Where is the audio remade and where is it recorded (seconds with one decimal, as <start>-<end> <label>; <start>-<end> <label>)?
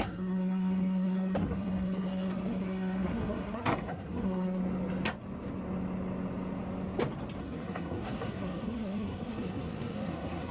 0.0-4.6 remade; 4.6-7.4 recorded; 7.4-10.5 remade